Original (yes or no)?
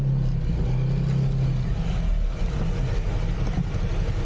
yes